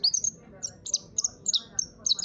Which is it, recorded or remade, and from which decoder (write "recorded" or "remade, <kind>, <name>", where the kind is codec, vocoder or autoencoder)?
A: recorded